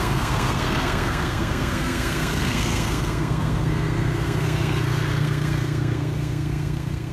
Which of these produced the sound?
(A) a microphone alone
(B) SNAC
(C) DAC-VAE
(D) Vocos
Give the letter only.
B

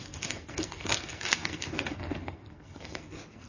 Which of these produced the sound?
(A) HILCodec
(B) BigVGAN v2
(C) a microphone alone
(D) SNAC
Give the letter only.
D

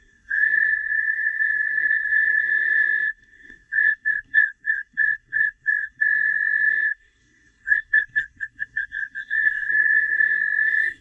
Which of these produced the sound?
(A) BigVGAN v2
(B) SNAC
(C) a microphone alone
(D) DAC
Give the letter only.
B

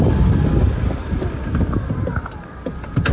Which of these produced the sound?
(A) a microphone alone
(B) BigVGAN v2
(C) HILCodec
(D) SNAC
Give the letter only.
A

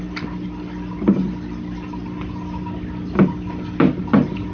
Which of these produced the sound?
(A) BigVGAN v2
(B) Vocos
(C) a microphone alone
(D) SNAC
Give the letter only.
C